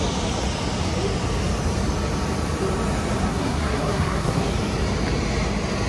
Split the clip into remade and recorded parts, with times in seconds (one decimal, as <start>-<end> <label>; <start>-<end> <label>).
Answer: 0.0-3.3 recorded; 3.3-4.5 remade; 4.5-5.9 recorded